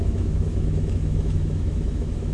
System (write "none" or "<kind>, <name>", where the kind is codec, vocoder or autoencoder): autoencoder, DAC-VAE